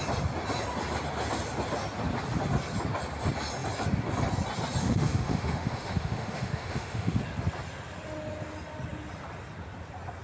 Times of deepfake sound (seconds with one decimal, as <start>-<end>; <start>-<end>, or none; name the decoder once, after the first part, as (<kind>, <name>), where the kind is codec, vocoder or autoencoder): 4.8-7.2 (autoencoder, DAC-VAE)